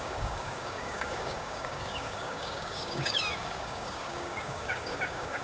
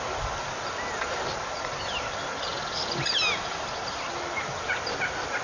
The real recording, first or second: second